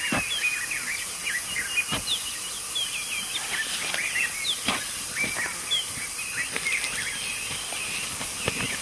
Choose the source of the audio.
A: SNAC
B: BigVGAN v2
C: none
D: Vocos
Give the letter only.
C